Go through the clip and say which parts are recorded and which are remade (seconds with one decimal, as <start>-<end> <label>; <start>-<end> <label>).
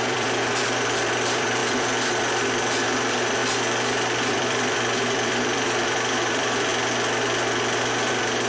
0.0-3.4 remade; 3.4-4.3 recorded; 4.3-6.7 remade; 6.7-8.1 recorded; 8.1-8.5 remade